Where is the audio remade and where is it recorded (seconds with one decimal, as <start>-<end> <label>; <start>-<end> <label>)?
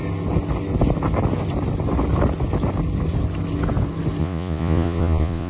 0.0-4.2 recorded; 4.2-5.5 remade